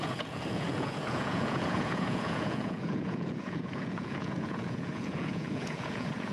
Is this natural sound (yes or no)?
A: no